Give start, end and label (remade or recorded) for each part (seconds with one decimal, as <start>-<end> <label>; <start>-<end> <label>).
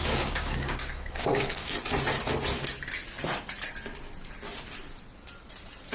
0.0-1.7 remade; 1.7-5.9 recorded